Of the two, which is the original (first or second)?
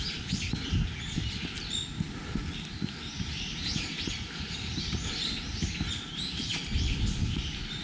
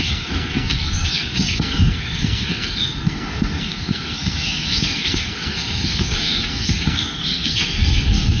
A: first